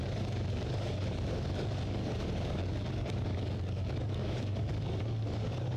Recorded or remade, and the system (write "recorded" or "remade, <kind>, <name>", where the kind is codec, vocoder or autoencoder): remade, codec, DAC